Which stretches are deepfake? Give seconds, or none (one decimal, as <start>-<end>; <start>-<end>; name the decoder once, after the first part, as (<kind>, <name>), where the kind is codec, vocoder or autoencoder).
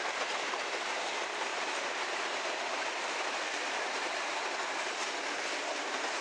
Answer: 0.0-1.5 (vocoder, BigVGAN v2); 2.1-5.0; 5.6-6.2